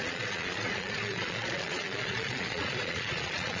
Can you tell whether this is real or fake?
fake